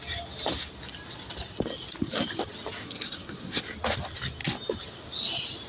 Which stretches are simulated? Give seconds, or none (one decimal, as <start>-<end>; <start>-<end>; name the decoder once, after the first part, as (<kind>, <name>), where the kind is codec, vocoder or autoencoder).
2.8-3.6 (codec, SNAC)